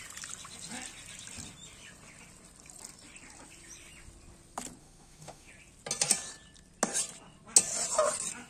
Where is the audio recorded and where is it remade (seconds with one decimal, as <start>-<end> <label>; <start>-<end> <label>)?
0.0-4.8 recorded; 4.8-5.5 remade; 5.5-8.5 recorded